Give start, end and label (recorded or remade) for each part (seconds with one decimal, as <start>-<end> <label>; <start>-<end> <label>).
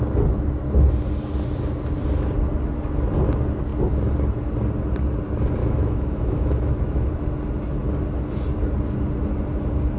0.0-5.6 recorded; 5.6-7.1 remade; 7.1-10.0 recorded